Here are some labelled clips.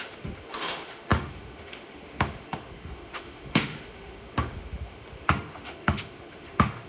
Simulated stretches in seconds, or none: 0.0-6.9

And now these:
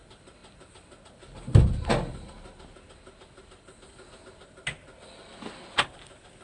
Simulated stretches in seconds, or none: none

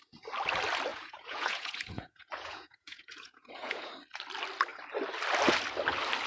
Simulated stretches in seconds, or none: 0.9-3.9

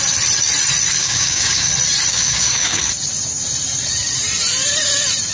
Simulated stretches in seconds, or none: 1.0-1.7; 2.1-2.8

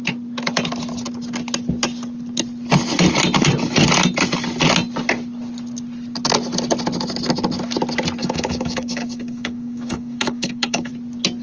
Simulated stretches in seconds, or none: 8.2-10.9

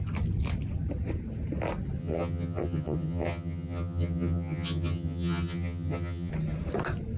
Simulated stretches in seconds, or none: 2.0-6.3